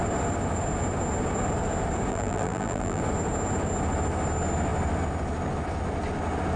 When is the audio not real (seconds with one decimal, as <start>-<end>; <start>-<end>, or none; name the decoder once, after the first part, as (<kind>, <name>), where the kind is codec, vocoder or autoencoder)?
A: 2.1-3.0 (vocoder, BigVGAN v2)